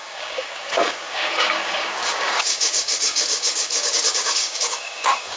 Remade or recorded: remade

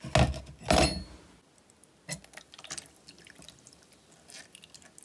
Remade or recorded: recorded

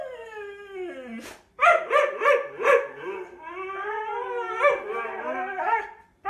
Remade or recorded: recorded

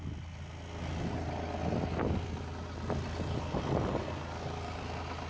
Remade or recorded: recorded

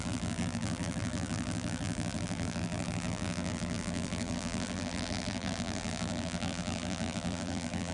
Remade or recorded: remade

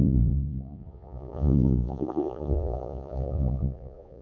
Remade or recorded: remade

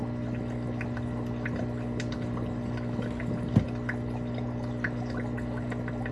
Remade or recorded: recorded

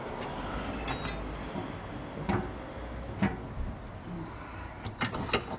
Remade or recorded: recorded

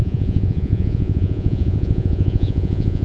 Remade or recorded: remade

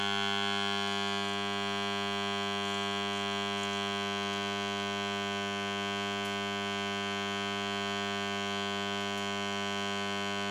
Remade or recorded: recorded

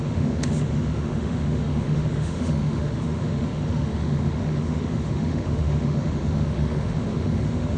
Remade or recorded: remade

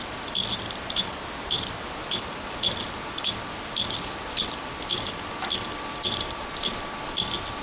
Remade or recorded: remade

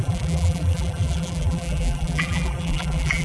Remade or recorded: remade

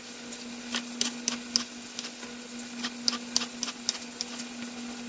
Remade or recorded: recorded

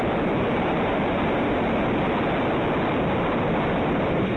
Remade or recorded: recorded